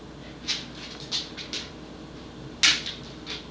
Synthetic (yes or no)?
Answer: no